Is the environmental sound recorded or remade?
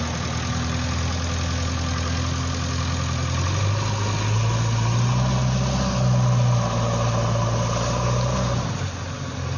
recorded